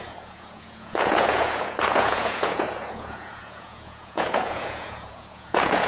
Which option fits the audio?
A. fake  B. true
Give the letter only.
A